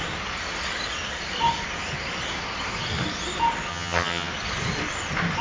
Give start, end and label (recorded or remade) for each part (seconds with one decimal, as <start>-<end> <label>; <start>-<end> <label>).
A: 0.0-3.7 recorded; 3.7-4.3 remade; 4.3-5.4 recorded

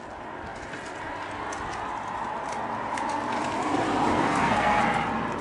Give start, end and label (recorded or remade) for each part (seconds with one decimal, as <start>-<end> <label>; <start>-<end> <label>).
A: 0.0-4.1 recorded; 4.1-4.8 remade; 4.8-5.4 recorded

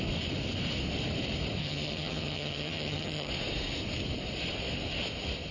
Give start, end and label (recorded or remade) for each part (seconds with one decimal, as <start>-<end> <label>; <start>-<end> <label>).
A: 0.0-1.6 recorded; 1.6-3.3 remade; 3.3-5.5 recorded

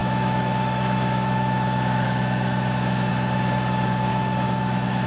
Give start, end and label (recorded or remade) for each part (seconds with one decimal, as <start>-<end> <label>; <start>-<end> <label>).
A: 0.0-3.1 remade; 3.1-4.1 recorded; 4.1-5.1 remade

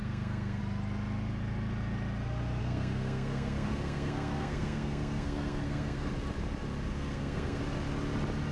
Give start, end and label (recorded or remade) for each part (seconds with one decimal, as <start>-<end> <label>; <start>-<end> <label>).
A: 0.0-0.6 remade; 0.6-2.6 recorded; 2.6-6.1 remade; 6.1-6.9 recorded; 6.9-7.6 remade; 7.6-8.5 recorded